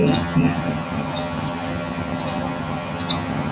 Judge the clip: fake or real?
fake